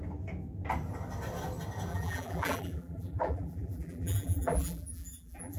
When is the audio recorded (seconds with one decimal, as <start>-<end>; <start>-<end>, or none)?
0.0-1.9